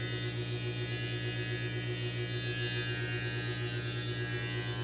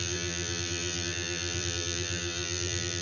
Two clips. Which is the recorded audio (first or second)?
first